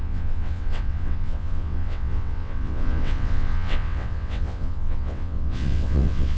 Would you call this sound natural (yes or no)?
no